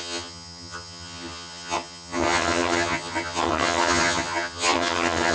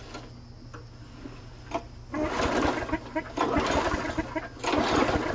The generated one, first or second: first